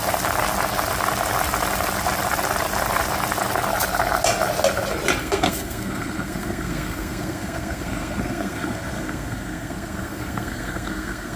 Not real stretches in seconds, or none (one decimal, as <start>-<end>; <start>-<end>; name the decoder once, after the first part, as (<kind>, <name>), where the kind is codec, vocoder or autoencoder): 5.2-11.4 (codec, SNAC)